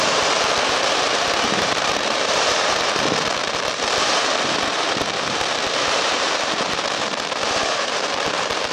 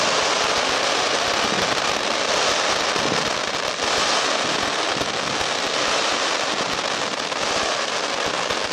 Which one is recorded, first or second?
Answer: second